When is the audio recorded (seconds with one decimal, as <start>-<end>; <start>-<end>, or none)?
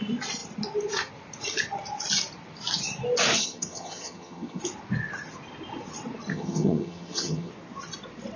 0.0-3.4; 4.6-6.3; 7.5-8.4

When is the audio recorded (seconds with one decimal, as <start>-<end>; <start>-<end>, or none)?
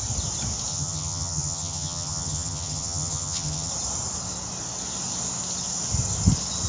0.0-0.7; 3.7-6.7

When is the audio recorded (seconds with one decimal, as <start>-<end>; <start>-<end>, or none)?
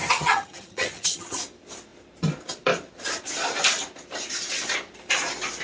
1.4-5.6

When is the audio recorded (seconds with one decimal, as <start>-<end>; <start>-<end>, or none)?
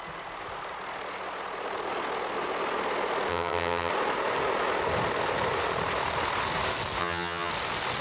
0.0-3.3; 3.9-7.0; 7.5-8.0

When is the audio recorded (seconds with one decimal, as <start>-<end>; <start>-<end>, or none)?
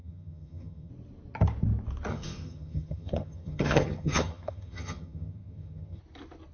0.9-2.1; 6.0-6.5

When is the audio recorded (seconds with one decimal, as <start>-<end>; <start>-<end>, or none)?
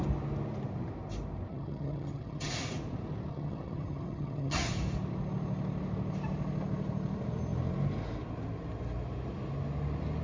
0.0-1.5; 2.5-3.3; 4.7-10.2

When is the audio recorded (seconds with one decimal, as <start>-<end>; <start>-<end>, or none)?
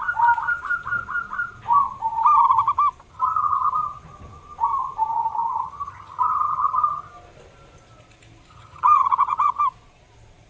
0.0-3.1; 3.7-5.1; 7.1-8.5; 9.6-10.5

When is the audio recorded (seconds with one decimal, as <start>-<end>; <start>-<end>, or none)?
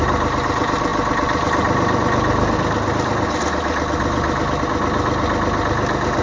0.0-6.2